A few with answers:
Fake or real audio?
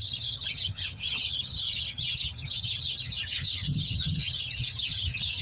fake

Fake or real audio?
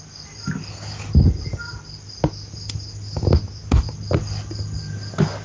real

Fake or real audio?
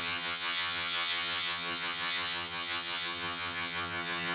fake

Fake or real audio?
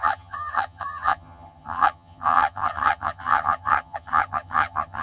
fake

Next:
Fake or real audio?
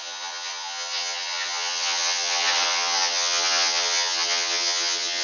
fake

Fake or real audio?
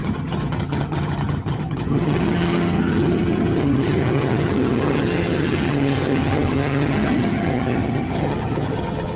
fake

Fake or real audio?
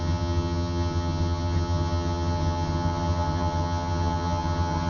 fake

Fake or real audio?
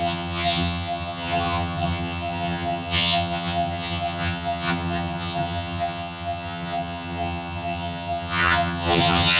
fake